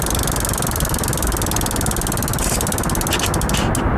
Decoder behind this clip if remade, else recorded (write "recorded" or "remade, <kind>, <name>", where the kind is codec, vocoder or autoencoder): recorded